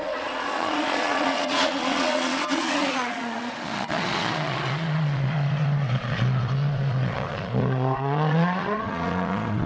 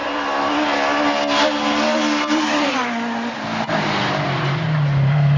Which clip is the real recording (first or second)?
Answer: second